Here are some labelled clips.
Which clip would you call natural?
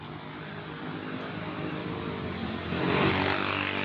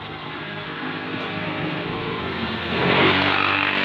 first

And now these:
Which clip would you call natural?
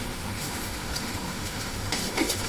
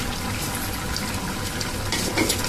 second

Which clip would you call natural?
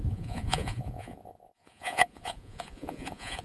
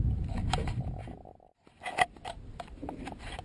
second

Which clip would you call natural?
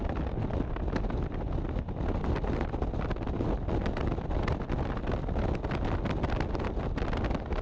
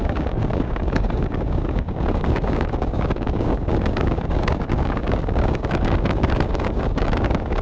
first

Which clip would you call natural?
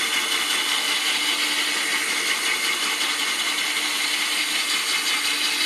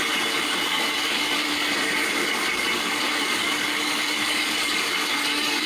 first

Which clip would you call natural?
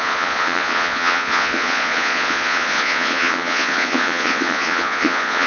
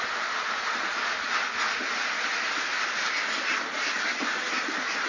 second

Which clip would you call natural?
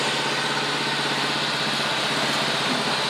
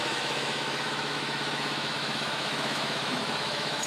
first